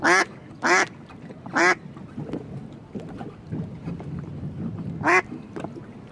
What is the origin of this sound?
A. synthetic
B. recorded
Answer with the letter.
B